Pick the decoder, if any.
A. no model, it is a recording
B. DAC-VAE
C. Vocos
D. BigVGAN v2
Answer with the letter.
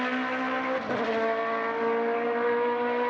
A